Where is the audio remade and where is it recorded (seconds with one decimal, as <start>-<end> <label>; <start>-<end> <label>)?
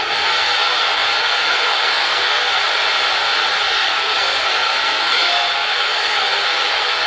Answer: 0.0-2.6 remade; 2.6-3.6 recorded; 3.6-7.1 remade